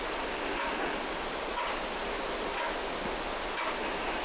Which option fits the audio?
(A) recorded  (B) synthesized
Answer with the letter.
A